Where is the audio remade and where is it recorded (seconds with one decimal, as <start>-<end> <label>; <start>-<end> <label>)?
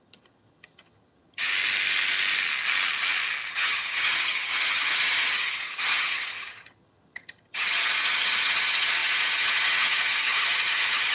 0.0-1.5 remade; 1.5-3.5 recorded; 3.5-11.1 remade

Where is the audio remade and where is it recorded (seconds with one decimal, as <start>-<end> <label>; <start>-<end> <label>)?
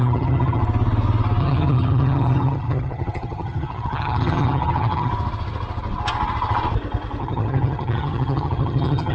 0.0-0.6 remade; 0.6-1.4 recorded; 1.4-5.1 remade; 5.1-7.2 recorded; 7.2-9.1 remade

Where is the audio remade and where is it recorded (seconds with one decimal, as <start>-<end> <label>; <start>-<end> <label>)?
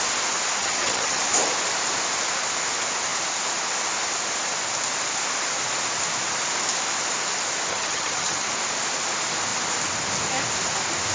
0.0-0.6 recorded; 0.6-1.2 remade; 1.2-7.7 recorded; 7.7-8.5 remade; 8.5-11.1 recorded